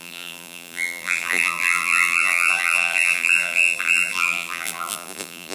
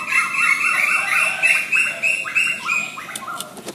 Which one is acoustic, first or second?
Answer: second